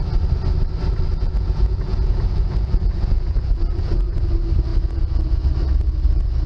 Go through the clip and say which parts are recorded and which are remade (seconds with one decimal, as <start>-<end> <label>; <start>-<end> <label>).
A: 0.0-1.1 recorded; 1.1-4.3 remade; 4.3-4.7 recorded; 4.7-5.4 remade; 5.4-6.5 recorded